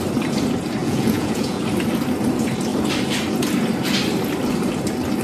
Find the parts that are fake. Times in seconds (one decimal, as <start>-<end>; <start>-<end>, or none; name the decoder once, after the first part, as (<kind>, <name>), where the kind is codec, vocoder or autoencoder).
0.8-1.6 (vocoder, Vocos)